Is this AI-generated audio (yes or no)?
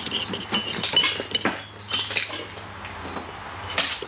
no